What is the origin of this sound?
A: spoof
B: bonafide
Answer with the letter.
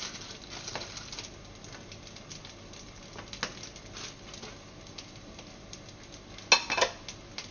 B